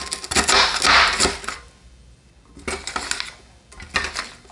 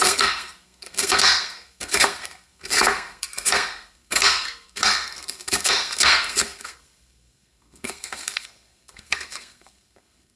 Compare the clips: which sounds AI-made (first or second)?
second